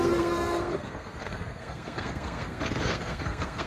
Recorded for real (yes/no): no